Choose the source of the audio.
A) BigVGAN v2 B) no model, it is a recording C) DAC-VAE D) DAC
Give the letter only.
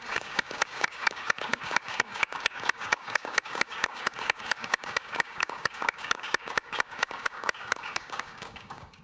D